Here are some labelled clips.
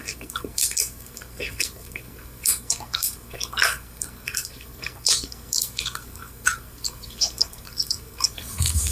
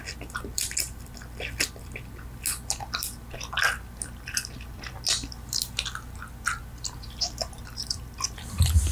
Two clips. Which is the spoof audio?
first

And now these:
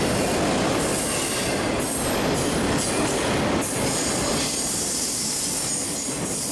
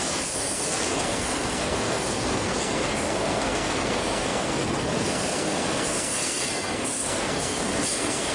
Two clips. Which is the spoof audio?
second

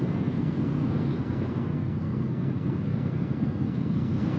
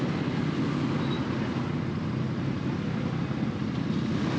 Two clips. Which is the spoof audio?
first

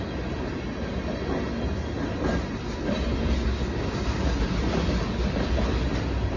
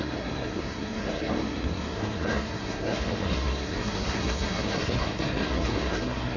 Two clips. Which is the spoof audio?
second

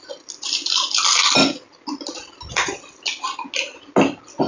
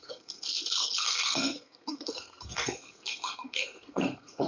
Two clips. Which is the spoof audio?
second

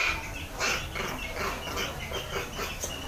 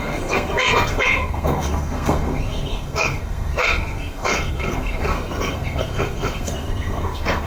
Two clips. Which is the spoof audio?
second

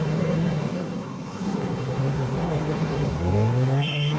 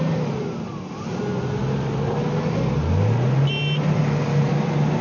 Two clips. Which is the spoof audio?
first